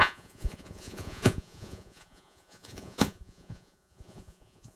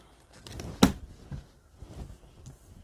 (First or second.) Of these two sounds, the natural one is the second